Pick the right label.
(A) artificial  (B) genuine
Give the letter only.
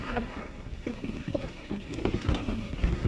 A